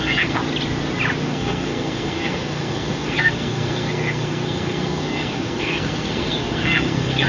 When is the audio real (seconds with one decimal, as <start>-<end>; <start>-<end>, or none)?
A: 0.4-1.2